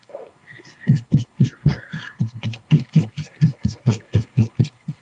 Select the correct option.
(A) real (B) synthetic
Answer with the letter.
B